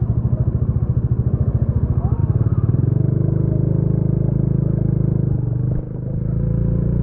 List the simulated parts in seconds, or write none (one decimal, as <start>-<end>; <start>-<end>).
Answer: none